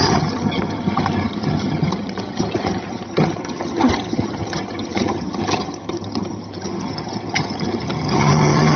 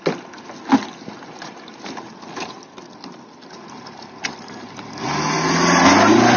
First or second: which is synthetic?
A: first